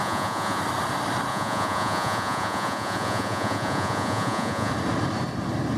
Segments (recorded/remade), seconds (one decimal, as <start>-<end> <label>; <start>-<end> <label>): 0.0-0.6 remade; 0.6-1.3 recorded; 1.3-4.7 remade; 4.7-5.8 recorded

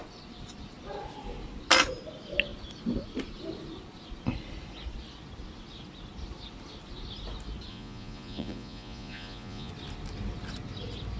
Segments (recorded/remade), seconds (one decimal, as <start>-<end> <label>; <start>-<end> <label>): 0.0-7.7 recorded; 7.7-9.7 remade; 9.7-11.2 recorded

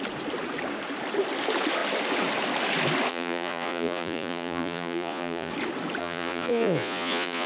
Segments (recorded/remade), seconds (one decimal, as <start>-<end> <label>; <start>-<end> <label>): 0.0-3.1 recorded; 3.1-5.5 remade; 5.5-6.0 recorded; 6.0-7.5 remade

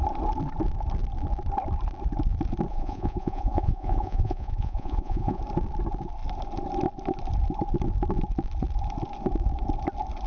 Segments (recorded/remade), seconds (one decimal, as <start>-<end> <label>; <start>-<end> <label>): 0.0-2.7 recorded; 2.7-5.4 remade; 5.4-10.3 recorded

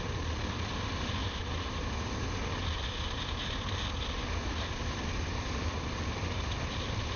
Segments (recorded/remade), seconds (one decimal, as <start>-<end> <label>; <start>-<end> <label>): 0.0-7.2 recorded

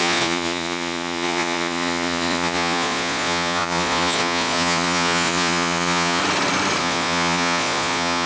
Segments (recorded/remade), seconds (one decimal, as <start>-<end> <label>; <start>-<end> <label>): 0.0-6.2 remade; 6.2-6.8 recorded; 6.8-8.3 remade

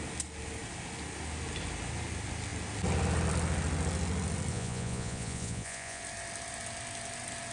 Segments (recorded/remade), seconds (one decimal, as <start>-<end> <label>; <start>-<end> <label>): 0.0-4.5 recorded; 4.5-6.0 remade; 6.0-7.5 recorded